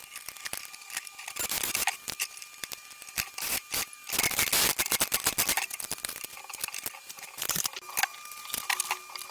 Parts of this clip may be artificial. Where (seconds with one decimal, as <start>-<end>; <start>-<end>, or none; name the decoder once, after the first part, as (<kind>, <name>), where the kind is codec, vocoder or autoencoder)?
none